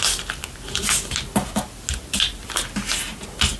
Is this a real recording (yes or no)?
yes